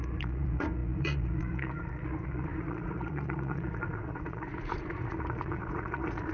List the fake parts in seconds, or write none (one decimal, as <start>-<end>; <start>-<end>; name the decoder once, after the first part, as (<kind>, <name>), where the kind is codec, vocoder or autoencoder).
0.0-6.3 (vocoder, Vocos)

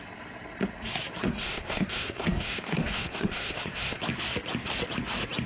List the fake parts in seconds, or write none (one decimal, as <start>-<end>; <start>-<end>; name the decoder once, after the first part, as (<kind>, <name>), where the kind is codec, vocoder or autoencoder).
1.3-4.0 (codec, SNAC)

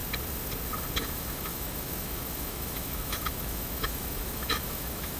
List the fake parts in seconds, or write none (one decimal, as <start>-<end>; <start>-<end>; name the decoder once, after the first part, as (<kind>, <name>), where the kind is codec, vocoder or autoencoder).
1.0-5.2 (autoencoder, DAC-VAE)

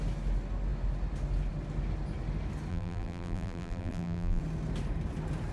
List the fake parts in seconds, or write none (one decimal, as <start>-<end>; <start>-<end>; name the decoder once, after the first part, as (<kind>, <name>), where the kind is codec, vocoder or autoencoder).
2.7-4.4 (vocoder, BigVGAN v2)

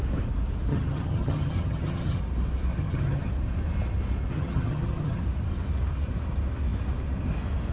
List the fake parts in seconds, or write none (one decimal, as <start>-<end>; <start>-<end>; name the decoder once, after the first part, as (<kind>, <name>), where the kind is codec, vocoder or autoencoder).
0.7-2.2 (vocoder, HiFi-GAN); 2.7-3.3; 4.3-5.2

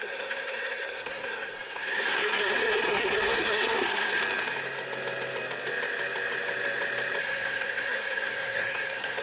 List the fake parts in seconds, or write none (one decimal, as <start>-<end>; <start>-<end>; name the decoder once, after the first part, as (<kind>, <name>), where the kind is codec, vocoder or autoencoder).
0.0-4.2 (codec, SNAC); 7.2-9.2